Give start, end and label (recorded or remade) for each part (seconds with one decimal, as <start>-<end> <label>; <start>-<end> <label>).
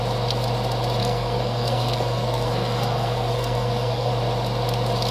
0.0-1.0 recorded; 1.0-4.1 remade; 4.1-5.1 recorded